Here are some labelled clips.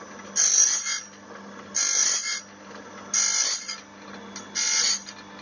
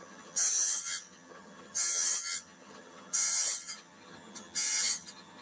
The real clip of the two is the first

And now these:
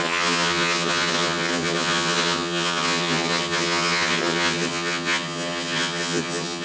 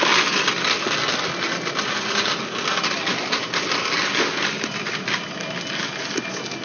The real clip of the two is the second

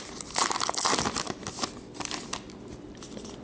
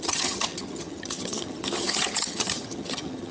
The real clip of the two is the first